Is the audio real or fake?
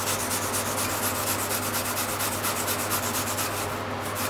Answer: real